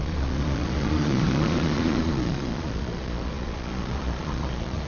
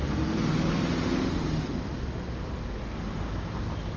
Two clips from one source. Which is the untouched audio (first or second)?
second